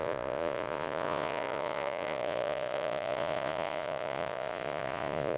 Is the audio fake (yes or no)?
yes